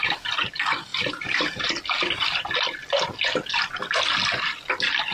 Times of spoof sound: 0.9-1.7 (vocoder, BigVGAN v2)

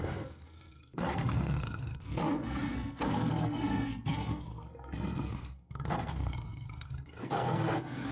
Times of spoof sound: 0.0-8.1 (codec, SNAC)

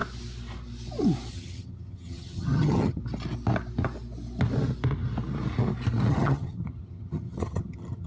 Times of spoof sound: 1.3-3.0 (vocoder, HiFi-GAN); 6.1-8.1

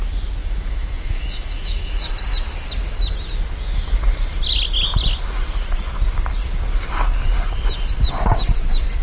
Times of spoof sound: 0.4-2.1 (autoencoder, DAC-VAE)

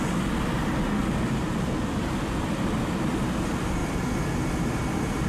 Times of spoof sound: none